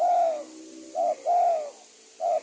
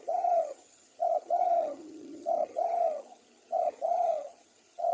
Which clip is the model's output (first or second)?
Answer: second